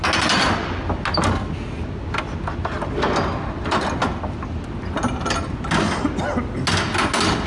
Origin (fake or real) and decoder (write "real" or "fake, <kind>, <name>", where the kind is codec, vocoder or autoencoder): real